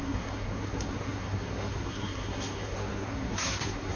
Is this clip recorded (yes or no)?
no